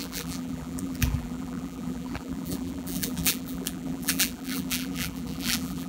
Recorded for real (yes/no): no